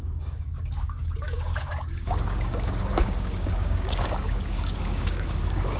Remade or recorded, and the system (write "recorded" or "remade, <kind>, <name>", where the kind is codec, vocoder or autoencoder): remade, codec, DAC